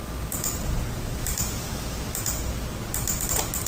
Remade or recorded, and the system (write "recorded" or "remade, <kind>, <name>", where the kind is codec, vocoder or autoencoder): recorded